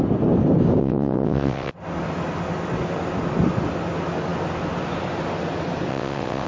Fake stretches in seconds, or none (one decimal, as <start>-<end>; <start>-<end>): 0.8-1.7; 5.9-6.5